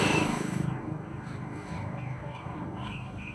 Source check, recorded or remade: remade